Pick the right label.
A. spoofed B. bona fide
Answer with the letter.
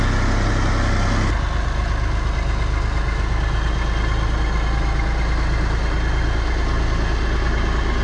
B